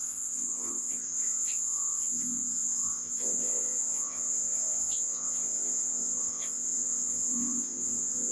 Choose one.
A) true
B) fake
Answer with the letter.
B